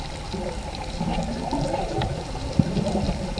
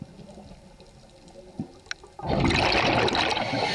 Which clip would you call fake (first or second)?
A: first